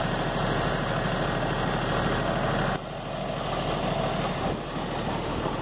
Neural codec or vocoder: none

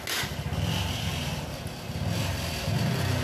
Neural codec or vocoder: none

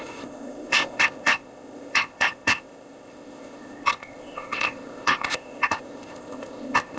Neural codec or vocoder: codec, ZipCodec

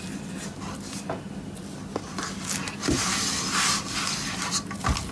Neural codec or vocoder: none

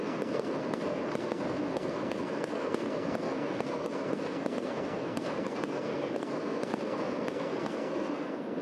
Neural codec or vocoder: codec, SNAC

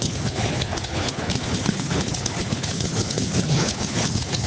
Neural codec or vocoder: codec, HILCodec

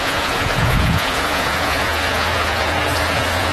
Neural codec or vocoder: vocoder, Vocos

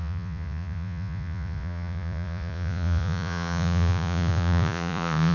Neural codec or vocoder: vocoder, Vocos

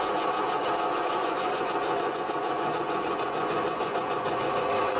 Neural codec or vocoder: vocoder, Vocos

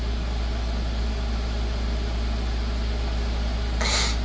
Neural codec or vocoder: none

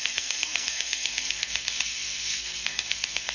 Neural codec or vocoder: codec, SNAC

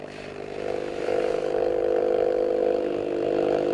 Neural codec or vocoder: none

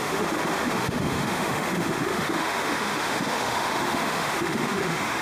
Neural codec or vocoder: autoencoder, DAC-VAE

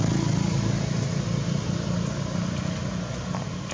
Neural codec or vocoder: none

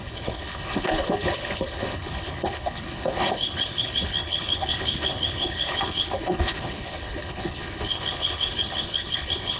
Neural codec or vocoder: codec, HILCodec